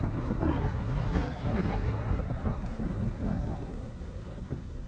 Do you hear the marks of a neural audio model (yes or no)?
yes